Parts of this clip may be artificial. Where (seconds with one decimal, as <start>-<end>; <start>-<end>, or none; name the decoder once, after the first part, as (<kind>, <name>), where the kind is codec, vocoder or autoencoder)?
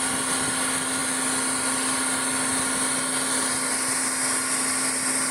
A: none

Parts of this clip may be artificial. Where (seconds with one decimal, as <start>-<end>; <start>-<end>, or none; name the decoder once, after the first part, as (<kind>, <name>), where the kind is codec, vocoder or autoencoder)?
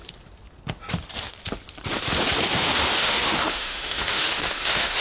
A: 3.0-5.0 (autoencoder, DAC-VAE)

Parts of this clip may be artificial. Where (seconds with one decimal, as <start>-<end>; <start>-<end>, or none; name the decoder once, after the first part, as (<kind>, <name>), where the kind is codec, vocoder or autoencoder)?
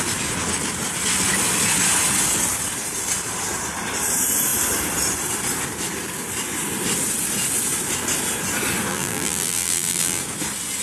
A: 8.9-10.2 (vocoder, BigVGAN v2)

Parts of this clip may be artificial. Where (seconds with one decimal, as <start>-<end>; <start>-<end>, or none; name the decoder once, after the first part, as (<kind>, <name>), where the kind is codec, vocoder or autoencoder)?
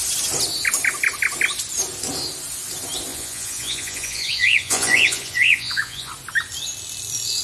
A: 3.1-6.1 (vocoder, Vocos)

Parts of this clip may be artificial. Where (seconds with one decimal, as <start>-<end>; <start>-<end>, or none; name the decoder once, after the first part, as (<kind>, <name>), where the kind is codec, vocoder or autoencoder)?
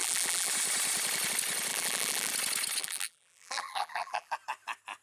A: 0.0-0.5 (vocoder, BigVGAN v2); 1.7-2.3; 2.8-4.3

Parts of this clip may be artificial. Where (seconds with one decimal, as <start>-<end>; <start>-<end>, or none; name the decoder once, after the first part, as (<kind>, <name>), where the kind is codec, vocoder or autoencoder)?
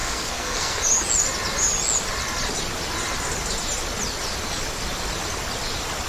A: 0.0-0.8 (codec, SNAC)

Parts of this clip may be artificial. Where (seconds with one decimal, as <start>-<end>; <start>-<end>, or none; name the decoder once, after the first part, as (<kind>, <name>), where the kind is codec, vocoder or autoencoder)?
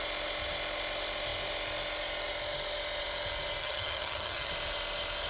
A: 3.6-4.5 (vocoder, HiFi-GAN)